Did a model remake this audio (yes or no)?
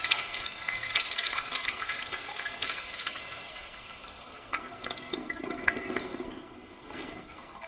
yes